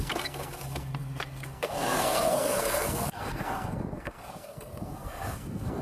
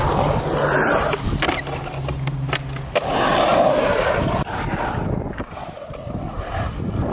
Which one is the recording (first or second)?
second